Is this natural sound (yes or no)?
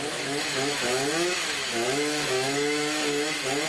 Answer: no